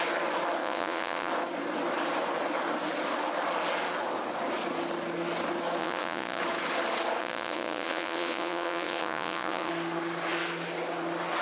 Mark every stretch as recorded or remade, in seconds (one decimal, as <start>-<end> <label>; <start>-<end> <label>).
0.0-0.6 recorded; 0.6-1.3 remade; 1.3-5.8 recorded; 5.8-6.4 remade; 6.4-7.2 recorded; 7.2-9.7 remade; 9.7-11.4 recorded